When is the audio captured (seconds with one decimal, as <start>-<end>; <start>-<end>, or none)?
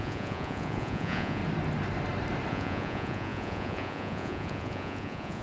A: 1.4-2.5